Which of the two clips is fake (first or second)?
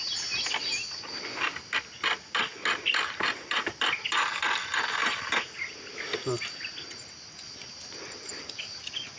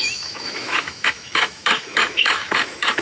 second